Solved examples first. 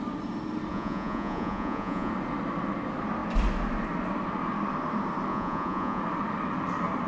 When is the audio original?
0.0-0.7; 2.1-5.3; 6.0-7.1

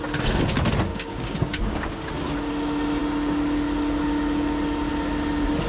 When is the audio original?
0.0-0.9; 2.1-5.7

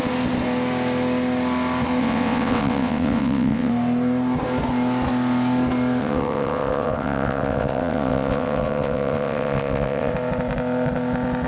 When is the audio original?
0.0-2.0; 3.7-6.0; 10.1-11.5

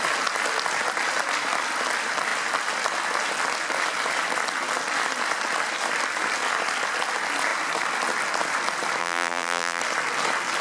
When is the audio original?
0.0-9.0; 9.8-10.6

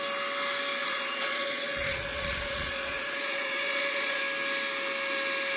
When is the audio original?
0.0-0.8; 4.2-5.6